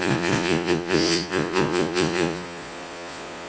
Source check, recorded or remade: remade